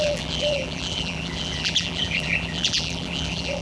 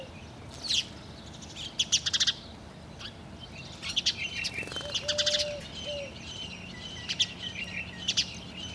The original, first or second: second